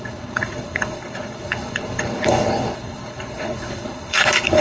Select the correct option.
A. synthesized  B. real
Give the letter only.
A